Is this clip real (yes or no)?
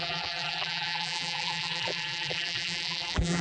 no